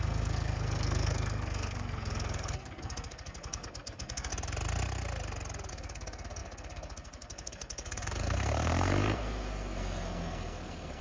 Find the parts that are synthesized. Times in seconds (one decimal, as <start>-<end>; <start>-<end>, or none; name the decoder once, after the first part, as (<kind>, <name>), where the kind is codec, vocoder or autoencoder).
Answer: 0.0-4.3 (codec, SNAC); 5.7-11.0